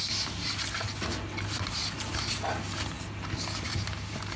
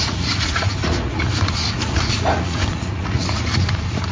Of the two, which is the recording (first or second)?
first